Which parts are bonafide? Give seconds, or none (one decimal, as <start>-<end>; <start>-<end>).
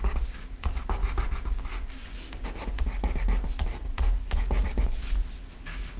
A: 1.0-2.3; 3.4-4.3; 5.0-5.6